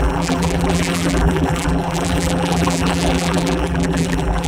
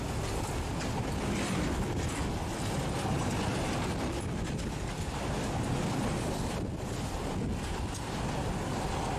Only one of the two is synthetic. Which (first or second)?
first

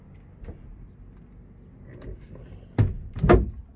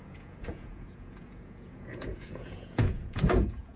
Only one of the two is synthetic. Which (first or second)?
second